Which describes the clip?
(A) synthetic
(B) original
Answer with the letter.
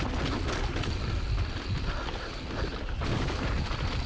B